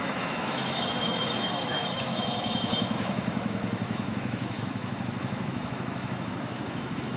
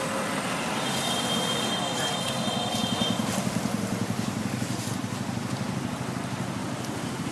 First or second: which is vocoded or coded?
first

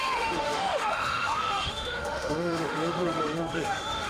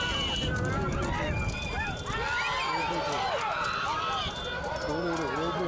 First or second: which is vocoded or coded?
first